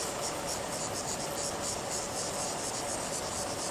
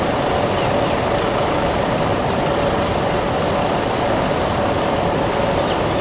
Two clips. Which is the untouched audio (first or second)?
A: first